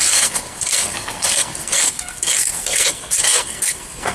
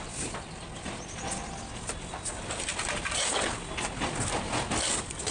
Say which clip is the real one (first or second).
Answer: second